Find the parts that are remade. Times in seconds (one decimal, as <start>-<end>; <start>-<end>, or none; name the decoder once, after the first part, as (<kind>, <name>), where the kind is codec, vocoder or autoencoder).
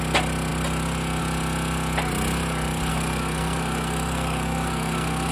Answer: 2.9-5.3 (codec, SNAC)